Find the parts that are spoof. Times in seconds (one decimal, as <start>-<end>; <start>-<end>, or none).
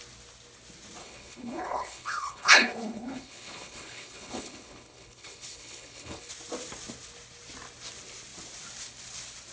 1.0-6.3